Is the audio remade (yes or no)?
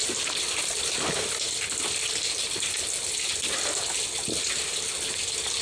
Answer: no